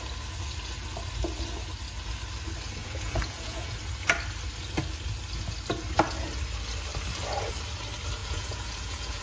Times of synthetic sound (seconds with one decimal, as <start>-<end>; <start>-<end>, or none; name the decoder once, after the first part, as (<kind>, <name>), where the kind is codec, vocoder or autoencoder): 2.8-3.8 (vocoder, Vocos); 8.2-9.2